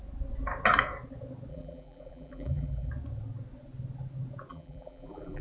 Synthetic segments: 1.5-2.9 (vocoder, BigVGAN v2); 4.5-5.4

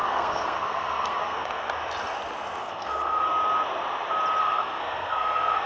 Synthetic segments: 0.0-1.7 (codec, SNAC); 2.6-3.3; 4.4-5.7

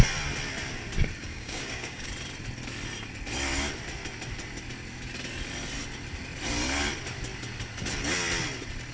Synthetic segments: 1.2-2.1 (codec, DAC)

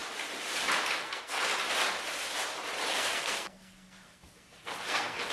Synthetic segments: 1.0-1.5 (codec, SNAC); 2.9-5.3

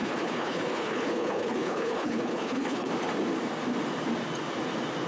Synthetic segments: 0.0-2.9 (codec, HILCodec)

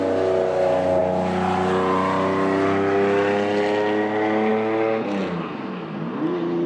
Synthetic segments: none

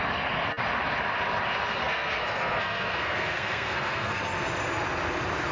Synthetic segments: 1.8-4.2 (codec, SNAC)